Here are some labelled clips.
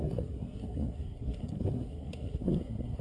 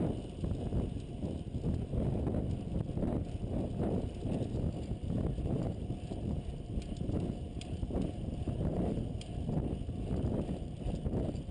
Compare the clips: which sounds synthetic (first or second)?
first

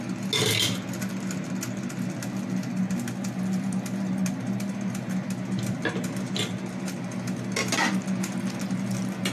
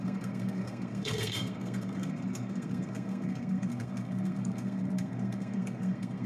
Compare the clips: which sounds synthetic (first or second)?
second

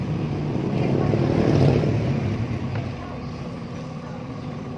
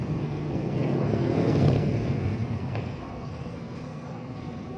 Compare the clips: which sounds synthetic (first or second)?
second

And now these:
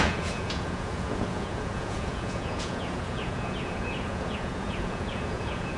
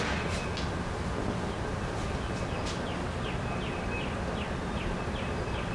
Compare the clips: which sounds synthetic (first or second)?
first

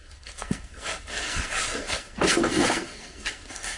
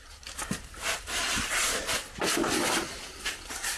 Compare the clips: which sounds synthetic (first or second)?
first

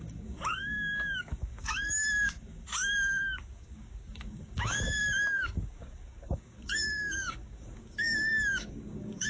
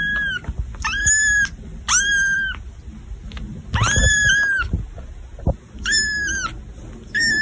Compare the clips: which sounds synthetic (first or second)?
first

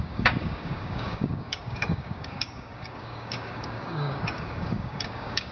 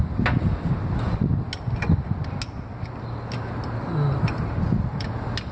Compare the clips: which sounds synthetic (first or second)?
first